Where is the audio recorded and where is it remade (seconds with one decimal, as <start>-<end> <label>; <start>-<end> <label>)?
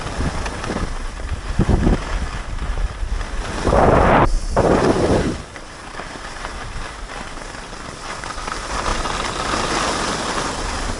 0.0-11.0 recorded